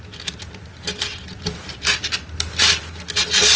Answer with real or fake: real